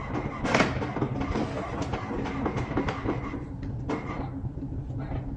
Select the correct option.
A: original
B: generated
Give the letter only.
A